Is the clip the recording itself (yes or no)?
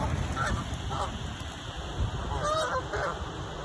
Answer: yes